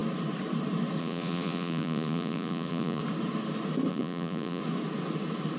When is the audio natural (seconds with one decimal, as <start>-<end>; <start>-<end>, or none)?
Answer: 0.0-1.0; 3.0-3.9; 4.6-5.6